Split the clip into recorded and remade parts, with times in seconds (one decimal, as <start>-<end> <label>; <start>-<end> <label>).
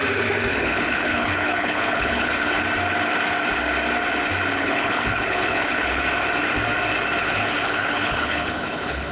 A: 0.0-0.5 recorded; 0.5-2.6 remade; 2.6-4.5 recorded; 4.5-6.0 remade; 6.0-7.2 recorded; 7.2-9.1 remade